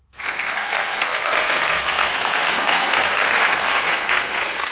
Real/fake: fake